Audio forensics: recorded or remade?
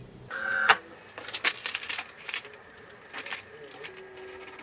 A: recorded